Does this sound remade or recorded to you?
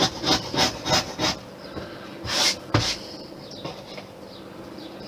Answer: remade